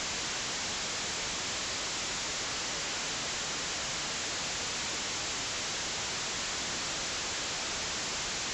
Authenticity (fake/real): real